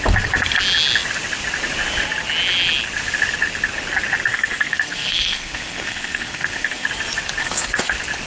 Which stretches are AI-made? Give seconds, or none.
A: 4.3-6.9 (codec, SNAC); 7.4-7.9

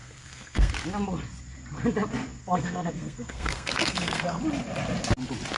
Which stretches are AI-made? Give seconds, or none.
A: 0.0-0.7 (codec, SNAC); 2.4-4.4

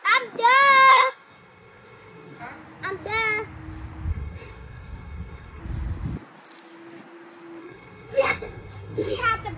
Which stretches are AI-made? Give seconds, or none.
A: 0.9-2.4 (codec, SNAC); 4.1-5.6; 7.6-9.2

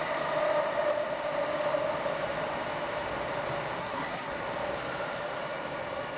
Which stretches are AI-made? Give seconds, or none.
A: 3.8-4.3 (codec, SNAC)

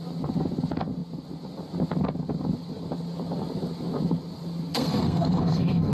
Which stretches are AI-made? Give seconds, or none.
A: 4.7-5.9 (codec, SNAC)

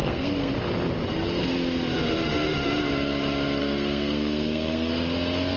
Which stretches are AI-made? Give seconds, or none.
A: 0.0-0.5 (codec, SNAC); 3.6-4.9